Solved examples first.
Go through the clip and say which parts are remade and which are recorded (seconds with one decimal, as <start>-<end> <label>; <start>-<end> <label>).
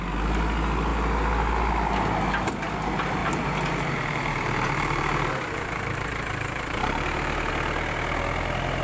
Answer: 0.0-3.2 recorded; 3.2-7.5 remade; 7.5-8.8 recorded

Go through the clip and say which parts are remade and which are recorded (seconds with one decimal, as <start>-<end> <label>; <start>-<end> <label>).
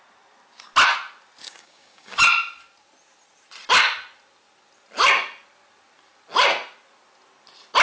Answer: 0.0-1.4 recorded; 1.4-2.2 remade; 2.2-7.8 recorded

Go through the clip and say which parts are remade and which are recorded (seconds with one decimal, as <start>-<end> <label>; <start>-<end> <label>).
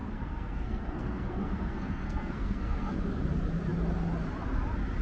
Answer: 0.0-3.0 remade; 3.0-5.0 recorded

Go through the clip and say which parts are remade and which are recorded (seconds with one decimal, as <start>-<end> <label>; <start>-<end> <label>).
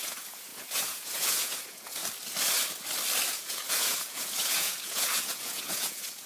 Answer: 0.0-2.0 remade; 2.0-3.3 recorded; 3.3-6.3 remade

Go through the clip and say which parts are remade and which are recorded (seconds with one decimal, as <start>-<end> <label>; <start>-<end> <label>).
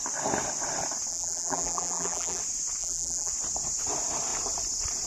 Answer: 0.0-1.1 recorded; 1.1-2.4 remade; 2.4-2.8 recorded; 2.8-3.3 remade; 3.3-5.1 recorded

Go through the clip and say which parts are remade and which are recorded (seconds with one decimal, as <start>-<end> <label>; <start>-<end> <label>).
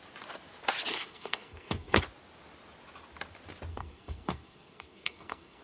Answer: 0.0-0.9 recorded; 0.9-2.0 remade; 2.0-3.7 recorded; 3.7-5.6 remade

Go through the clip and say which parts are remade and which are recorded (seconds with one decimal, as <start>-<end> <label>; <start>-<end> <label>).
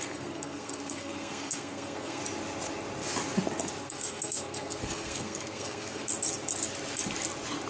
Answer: 0.0-2.2 remade; 2.2-3.8 recorded; 3.8-6.1 remade; 6.1-7.7 recorded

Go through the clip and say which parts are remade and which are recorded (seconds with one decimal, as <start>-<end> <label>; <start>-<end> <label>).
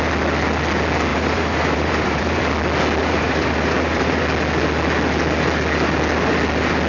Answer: 0.0-1.1 recorded; 1.1-2.4 remade; 2.4-3.0 recorded; 3.0-4.2 remade; 4.2-6.9 recorded